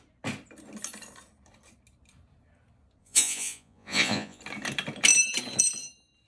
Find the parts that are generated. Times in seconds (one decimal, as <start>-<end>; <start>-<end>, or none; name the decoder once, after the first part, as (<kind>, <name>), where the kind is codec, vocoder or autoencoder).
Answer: 3.0-4.4 (vocoder, Vocos)